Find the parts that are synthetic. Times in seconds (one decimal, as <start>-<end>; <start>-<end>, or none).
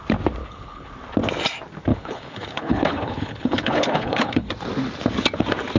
0.4-0.9; 1.9-4.5